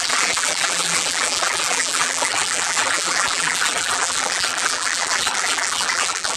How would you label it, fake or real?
fake